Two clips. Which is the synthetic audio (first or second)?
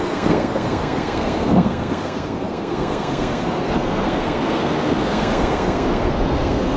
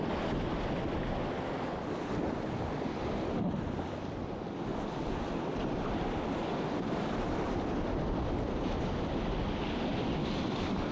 first